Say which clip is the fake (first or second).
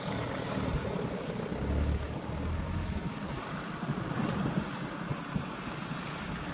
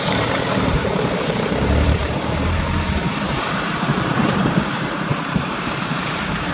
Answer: second